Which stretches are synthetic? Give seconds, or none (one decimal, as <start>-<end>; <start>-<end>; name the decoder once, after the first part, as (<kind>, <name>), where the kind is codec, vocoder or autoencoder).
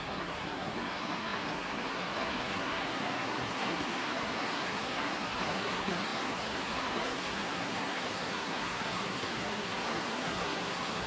0.0-11.1 (codec, SNAC)